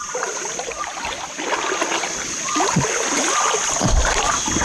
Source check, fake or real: real